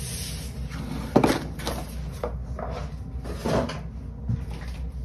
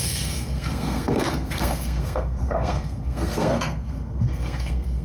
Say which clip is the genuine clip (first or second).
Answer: first